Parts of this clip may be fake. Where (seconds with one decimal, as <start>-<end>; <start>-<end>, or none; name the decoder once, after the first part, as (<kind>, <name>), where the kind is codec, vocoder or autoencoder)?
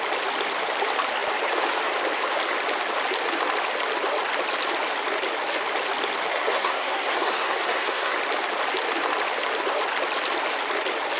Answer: 6.3-8.1 (codec, SNAC)